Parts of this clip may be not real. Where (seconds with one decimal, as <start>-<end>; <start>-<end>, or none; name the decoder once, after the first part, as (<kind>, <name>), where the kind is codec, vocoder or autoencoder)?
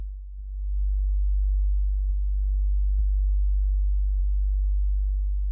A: 3.0-4.2 (autoencoder, DAC-VAE)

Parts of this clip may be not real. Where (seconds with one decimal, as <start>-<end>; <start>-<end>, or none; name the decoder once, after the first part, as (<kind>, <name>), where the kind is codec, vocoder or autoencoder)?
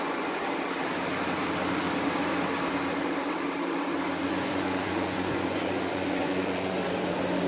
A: 0.0-0.4 (vocoder, Vocos); 4.3-6.8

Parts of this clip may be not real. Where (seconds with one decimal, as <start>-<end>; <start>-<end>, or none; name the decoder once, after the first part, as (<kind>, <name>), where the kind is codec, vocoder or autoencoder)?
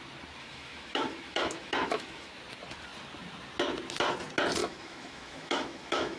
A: 0.4-2.3 (autoencoder, DAC-VAE); 4.6-6.2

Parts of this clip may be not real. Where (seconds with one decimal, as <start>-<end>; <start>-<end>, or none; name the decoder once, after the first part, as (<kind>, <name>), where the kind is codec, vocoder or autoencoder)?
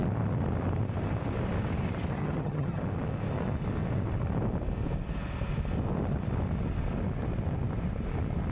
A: 2.2-2.8 (vocoder, HiFi-GAN)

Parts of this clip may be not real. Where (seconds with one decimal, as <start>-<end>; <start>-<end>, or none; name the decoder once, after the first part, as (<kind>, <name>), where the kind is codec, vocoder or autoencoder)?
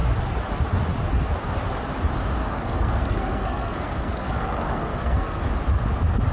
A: 2.4-5.4 (codec, SNAC)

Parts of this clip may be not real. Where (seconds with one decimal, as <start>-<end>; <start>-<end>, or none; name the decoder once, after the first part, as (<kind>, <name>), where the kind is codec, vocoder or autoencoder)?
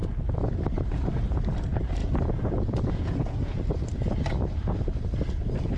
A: 2.0-3.6 (vocoder, Vocos)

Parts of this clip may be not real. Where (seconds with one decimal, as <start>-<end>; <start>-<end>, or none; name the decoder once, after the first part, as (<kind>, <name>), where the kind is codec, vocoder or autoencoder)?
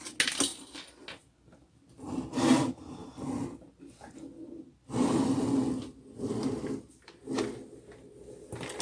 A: none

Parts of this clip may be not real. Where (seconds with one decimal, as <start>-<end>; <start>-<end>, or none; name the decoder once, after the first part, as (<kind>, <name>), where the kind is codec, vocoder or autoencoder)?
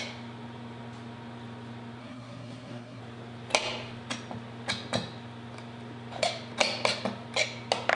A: 2.0-3.0 (codec, SNAC)